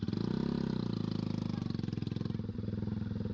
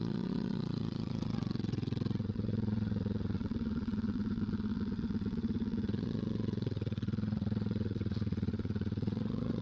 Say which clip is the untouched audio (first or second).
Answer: first